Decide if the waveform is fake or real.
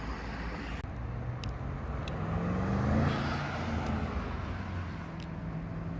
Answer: real